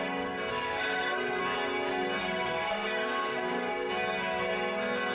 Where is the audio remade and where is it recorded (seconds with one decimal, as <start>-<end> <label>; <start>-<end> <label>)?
0.0-0.5 recorded; 0.5-1.4 remade; 1.4-2.2 recorded; 2.2-3.7 remade; 3.7-5.1 recorded